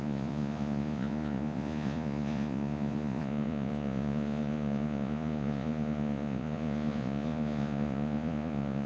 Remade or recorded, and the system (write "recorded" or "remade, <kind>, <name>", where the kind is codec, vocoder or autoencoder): remade, vocoder, Vocos